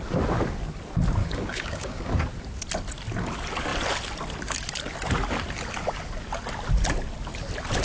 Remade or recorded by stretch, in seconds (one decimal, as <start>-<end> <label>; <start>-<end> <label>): 0.0-1.2 recorded; 1.2-2.1 remade; 2.1-7.8 recorded